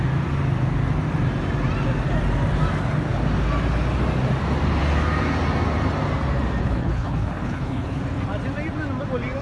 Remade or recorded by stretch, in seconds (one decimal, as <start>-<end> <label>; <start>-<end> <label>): 0.0-6.6 recorded; 6.6-8.0 remade; 8.0-9.4 recorded